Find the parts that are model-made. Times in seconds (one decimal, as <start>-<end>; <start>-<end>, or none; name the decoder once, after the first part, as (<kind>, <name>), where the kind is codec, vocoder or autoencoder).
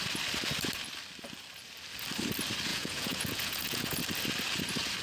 2.7-4.0 (vocoder, Vocos)